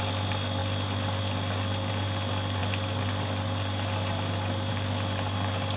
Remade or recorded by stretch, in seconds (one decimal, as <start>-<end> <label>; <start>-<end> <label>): 0.0-2.6 recorded; 2.6-4.7 remade; 4.7-5.8 recorded